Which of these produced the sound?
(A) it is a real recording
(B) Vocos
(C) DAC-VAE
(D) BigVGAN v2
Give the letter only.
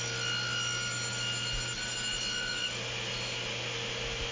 A